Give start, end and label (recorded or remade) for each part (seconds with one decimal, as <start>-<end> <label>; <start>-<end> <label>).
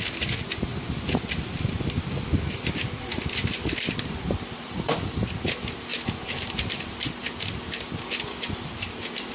0.0-0.7 recorded; 0.7-5.5 remade; 5.5-9.3 recorded